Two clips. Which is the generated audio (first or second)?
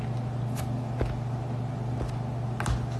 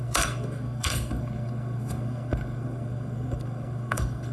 second